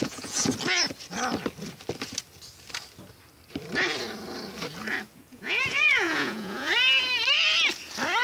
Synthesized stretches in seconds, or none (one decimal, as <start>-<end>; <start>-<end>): 0.0-0.5; 5.3-6.7